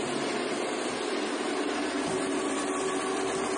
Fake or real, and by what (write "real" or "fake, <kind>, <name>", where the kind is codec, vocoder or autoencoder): real